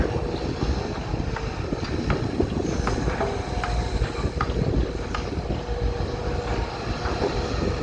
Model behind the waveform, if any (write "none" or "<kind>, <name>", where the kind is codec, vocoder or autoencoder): none